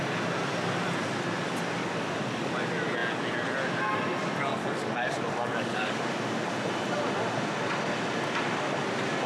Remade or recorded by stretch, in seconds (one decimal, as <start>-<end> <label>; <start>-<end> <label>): 0.0-1.8 recorded; 1.8-2.5 remade; 2.5-4.5 recorded; 4.5-6.0 remade; 6.0-9.3 recorded

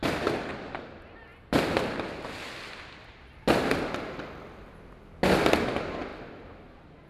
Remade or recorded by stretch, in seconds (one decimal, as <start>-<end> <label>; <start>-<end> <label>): 0.0-7.1 recorded

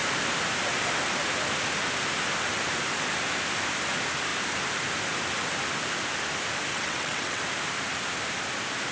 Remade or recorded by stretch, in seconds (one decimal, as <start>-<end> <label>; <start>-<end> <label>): 0.0-6.7 recorded; 6.7-7.4 remade; 7.4-8.9 recorded

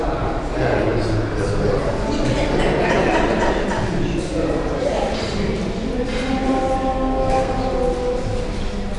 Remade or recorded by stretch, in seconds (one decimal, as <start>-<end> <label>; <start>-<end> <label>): 0.0-6.9 recorded; 6.9-7.5 remade; 7.5-9.0 recorded

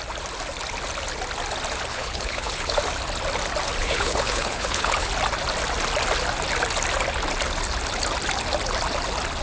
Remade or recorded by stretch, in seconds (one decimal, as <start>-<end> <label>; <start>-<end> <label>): 0.0-1.9 recorded; 1.9-2.8 remade; 2.8-3.8 recorded; 3.8-5.1 remade; 5.1-9.4 recorded

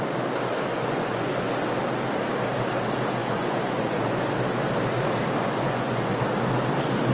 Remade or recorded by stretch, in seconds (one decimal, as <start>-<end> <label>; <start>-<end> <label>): 0.0-0.7 recorded; 0.7-1.5 remade; 1.5-3.2 recorded; 3.2-4.3 remade; 4.3-5.4 recorded; 5.4-6.2 remade; 6.2-7.1 recorded